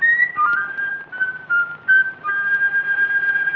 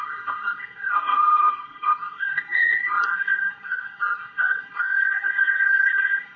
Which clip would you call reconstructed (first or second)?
second